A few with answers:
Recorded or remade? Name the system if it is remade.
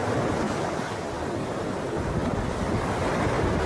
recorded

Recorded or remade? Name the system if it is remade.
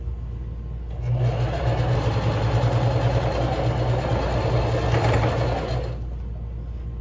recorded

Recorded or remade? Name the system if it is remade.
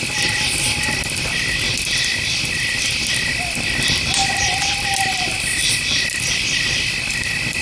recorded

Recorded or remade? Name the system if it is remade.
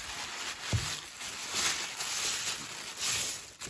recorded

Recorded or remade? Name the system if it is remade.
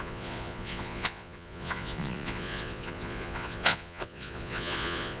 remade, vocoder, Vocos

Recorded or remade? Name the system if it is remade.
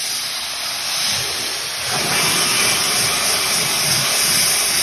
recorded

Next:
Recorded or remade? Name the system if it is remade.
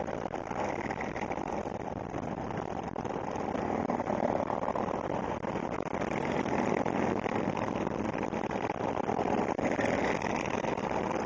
recorded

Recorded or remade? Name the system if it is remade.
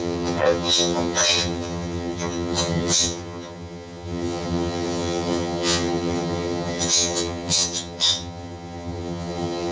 remade, vocoder, HiFi-GAN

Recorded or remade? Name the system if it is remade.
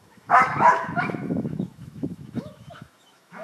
remade, autoencoder, DAC-VAE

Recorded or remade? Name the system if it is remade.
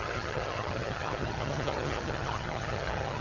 remade, vocoder, HiFi-GAN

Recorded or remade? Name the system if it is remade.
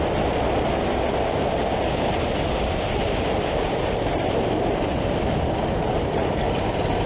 recorded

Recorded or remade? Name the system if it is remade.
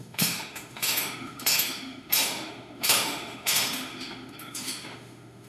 remade, autoencoder, DAC-VAE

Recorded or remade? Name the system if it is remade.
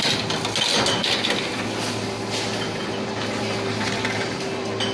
recorded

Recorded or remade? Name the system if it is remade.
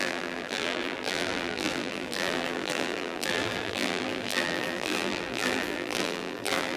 remade, vocoder, BigVGAN v2